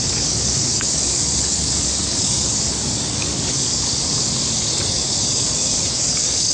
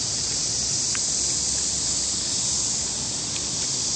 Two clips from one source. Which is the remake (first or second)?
first